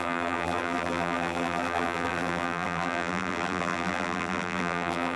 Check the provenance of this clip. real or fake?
fake